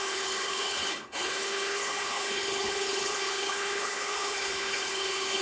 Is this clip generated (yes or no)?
yes